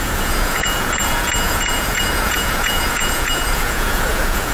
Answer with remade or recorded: remade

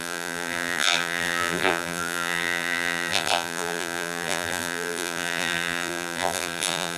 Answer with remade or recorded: remade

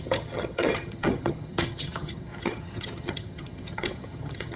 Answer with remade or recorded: remade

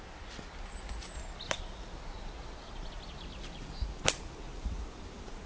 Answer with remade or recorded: recorded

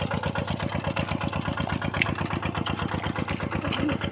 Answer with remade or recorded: recorded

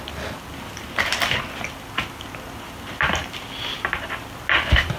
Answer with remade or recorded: recorded